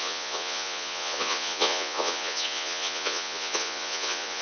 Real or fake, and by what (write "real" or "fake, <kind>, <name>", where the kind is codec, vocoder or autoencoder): fake, vocoder, Vocos